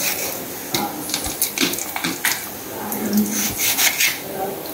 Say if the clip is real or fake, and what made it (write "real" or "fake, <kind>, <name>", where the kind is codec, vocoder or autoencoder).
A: real